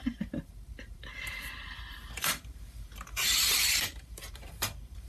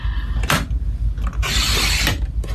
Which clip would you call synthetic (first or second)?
first